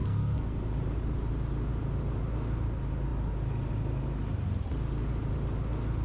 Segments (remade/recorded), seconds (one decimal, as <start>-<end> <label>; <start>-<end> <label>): 0.0-0.7 remade; 0.7-6.0 recorded